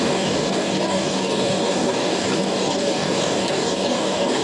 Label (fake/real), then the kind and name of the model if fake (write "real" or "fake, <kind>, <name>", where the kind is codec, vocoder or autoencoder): fake, codec, DAC